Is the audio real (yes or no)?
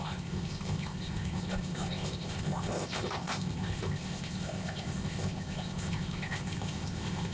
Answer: no